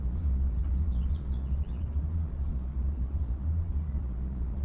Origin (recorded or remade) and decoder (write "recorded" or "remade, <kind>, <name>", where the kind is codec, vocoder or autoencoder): remade, vocoder, Vocos